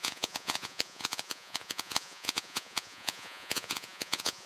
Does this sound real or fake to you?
fake